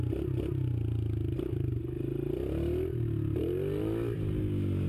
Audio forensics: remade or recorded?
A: recorded